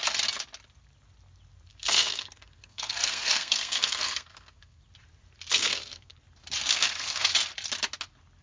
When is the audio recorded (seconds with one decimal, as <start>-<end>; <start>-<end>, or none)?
0.0-1.7; 4.8-5.5; 6.1-6.7; 7.3-8.4